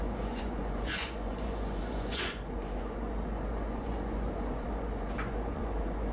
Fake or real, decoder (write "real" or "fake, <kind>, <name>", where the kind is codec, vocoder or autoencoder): fake, vocoder, Vocos